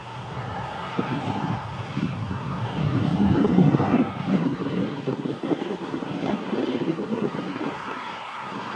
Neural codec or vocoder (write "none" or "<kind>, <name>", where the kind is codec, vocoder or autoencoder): codec, SNAC